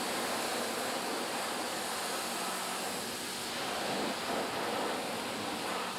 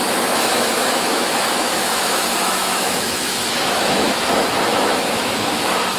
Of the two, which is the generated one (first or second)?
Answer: second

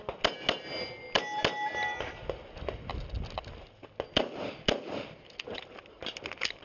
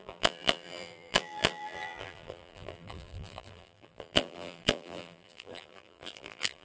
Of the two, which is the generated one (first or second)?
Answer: second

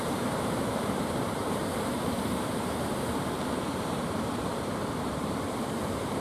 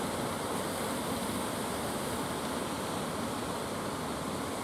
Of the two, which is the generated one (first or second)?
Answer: first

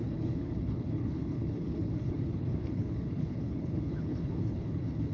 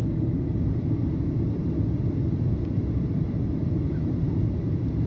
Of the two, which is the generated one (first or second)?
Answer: first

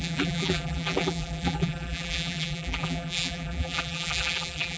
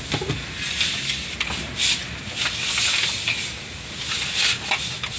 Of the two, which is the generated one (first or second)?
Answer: first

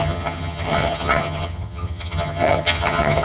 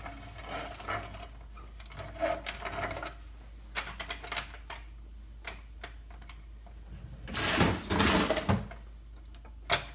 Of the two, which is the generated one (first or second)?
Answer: first